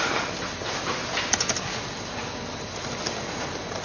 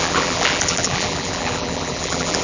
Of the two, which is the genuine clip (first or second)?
first